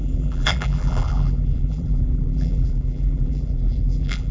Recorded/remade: remade